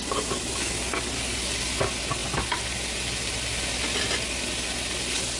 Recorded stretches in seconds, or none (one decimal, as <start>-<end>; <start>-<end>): 0.0-5.4